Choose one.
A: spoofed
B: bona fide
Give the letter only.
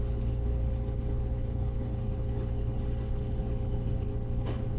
A